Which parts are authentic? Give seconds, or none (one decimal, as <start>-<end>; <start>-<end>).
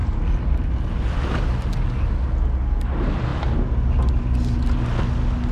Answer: 0.0-5.5